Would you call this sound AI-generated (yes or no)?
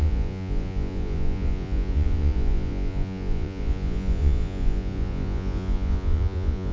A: yes